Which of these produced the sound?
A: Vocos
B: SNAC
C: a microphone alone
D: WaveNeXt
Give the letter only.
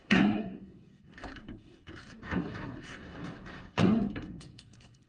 B